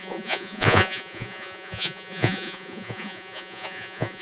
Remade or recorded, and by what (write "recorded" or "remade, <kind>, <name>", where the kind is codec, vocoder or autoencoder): remade, vocoder, Vocos